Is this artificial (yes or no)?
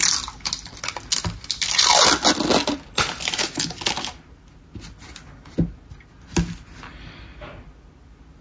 no